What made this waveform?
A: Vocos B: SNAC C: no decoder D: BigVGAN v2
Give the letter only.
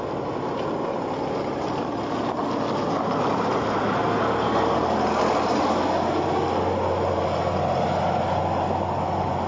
C